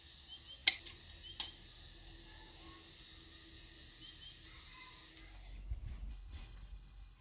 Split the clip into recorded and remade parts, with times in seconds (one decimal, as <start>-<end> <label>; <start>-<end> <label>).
0.0-6.1 recorded; 6.1-7.2 remade